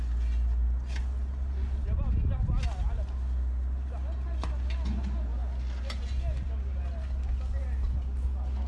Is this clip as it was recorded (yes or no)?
yes